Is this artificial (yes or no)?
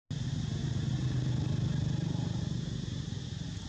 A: no